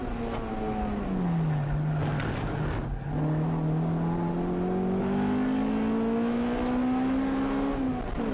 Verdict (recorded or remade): recorded